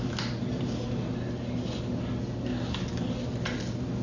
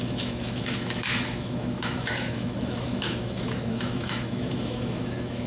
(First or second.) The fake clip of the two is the second